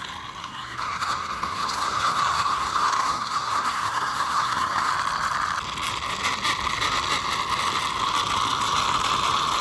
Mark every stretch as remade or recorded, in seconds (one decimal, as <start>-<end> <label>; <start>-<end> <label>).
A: 0.0-0.4 recorded; 0.4-4.9 remade; 4.9-9.6 recorded

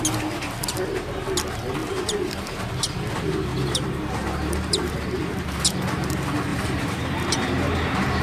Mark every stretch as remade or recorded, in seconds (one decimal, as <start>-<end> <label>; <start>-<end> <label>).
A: 0.0-1.8 recorded; 1.8-2.6 remade; 2.6-3.5 recorded; 3.5-5.3 remade; 5.3-6.5 recorded; 6.5-8.2 remade

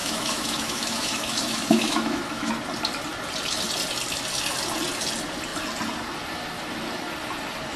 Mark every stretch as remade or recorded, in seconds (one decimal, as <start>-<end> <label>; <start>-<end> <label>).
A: 0.0-2.5 remade; 2.5-7.8 recorded

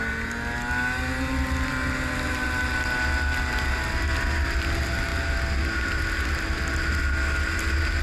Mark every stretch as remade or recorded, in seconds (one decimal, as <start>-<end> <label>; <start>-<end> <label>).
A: 0.0-8.0 recorded

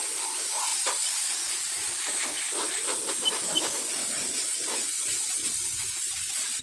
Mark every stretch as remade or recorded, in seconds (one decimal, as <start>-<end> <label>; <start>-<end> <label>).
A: 0.0-6.6 recorded